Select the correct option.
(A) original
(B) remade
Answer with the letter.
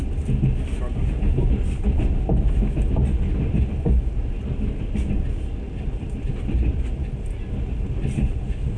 A